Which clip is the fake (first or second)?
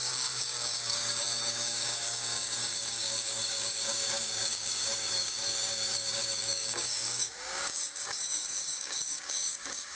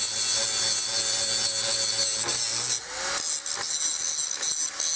first